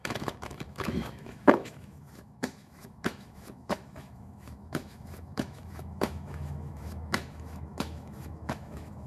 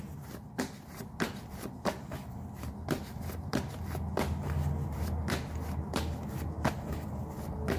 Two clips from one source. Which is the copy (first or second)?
first